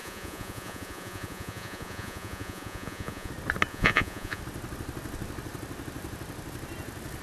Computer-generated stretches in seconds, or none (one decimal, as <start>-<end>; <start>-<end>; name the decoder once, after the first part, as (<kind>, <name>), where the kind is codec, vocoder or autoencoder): 0.0-3.3 (vocoder, Vocos); 3.7-4.4